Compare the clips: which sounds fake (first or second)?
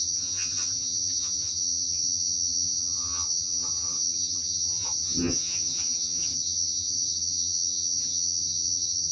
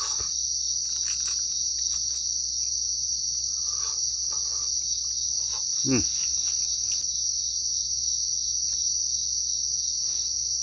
first